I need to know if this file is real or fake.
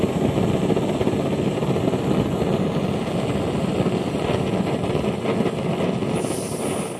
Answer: real